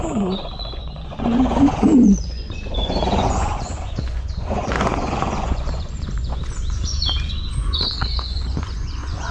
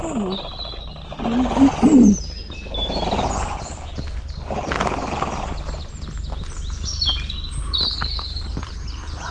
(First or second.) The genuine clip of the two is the second